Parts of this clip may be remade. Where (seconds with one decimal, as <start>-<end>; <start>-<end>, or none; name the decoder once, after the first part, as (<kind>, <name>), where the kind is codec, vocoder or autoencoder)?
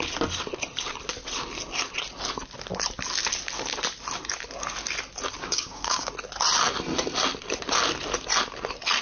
5.4-6.1 (codec, DAC)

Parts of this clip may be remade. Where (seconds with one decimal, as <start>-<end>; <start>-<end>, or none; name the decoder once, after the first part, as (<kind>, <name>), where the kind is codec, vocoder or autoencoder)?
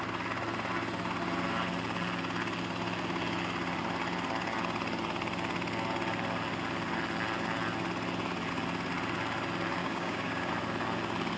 9.8-10.5 (codec, DAC)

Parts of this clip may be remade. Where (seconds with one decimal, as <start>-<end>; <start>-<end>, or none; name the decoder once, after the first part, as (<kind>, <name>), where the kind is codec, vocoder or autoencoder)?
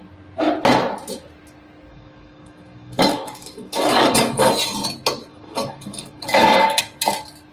1.9-4.5 (codec, DAC); 5.3-6.8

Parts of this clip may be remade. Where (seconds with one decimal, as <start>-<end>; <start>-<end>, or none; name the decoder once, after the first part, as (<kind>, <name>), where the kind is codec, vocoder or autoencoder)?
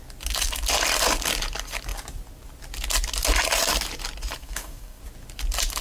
4.4-5.0 (codec, DAC)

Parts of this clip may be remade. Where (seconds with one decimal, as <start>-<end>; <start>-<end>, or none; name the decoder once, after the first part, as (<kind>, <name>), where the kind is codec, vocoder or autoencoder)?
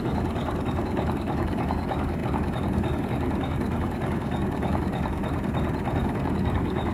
0.0-5.2 (codec, DAC); 6.0-6.9